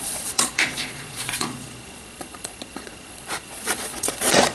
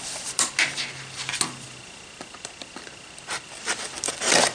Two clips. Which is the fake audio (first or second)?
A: first